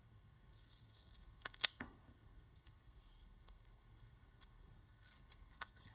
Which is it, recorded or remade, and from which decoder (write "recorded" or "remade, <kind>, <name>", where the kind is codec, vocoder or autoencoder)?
remade, codec, SNAC